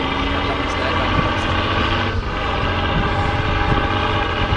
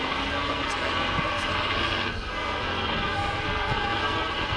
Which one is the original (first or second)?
first